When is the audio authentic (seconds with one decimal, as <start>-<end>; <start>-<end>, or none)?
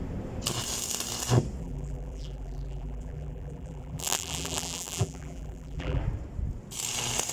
0.0-1.6; 6.0-7.3